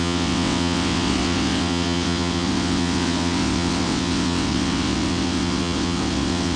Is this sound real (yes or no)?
no